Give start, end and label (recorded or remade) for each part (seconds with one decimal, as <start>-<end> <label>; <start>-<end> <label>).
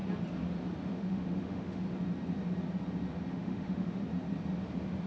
0.0-0.9 recorded; 0.9-1.8 remade; 1.8-3.3 recorded; 3.3-4.0 remade; 4.0-5.1 recorded